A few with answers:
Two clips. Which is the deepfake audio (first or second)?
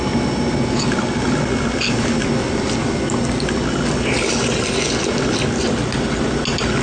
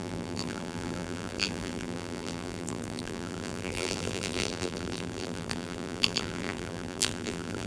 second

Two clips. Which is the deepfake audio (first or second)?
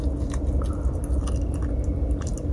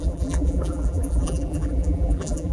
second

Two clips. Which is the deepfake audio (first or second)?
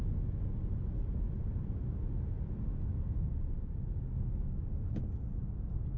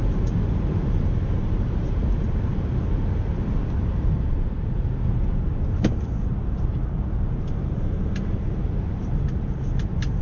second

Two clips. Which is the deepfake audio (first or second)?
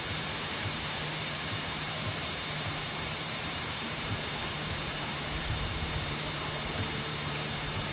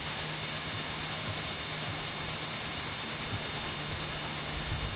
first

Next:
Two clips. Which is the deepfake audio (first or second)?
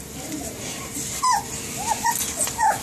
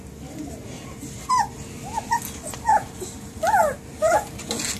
first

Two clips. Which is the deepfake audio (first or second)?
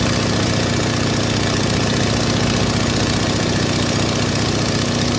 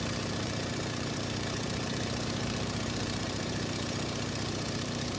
second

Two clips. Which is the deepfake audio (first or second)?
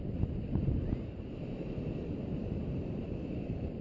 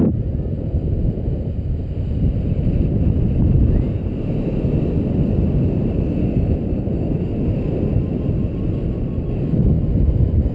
first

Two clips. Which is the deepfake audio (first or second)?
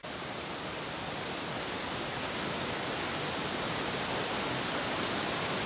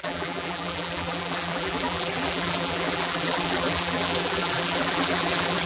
second